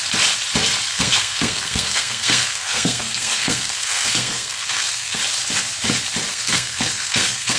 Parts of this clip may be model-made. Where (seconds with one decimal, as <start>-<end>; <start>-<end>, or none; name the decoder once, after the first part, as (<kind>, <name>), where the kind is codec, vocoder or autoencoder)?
0.9-5.2 (codec, SNAC); 6.3-7.6